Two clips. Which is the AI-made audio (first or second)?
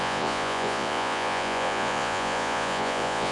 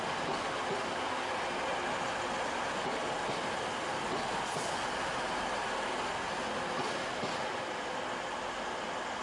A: first